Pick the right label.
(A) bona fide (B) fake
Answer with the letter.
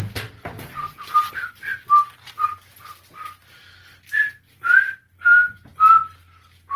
A